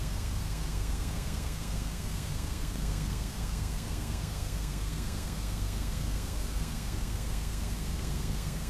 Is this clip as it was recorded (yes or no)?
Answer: no